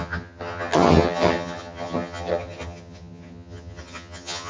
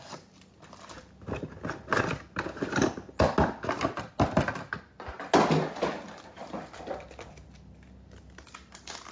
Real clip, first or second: second